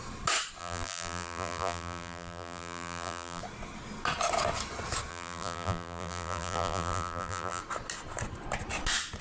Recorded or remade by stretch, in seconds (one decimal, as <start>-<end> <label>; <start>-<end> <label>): 0.0-0.6 recorded; 0.6-3.4 remade; 3.4-5.1 recorded; 5.1-7.6 remade; 7.6-9.2 recorded